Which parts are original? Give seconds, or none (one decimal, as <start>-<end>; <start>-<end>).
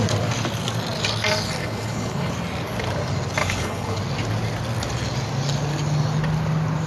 0.0-1.6; 2.3-3.4; 4.0-6.9